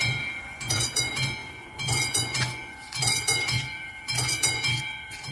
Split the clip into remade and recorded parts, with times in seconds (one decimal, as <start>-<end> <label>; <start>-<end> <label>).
0.0-5.3 remade